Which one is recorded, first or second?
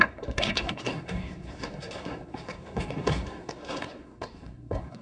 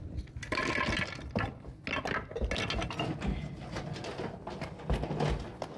second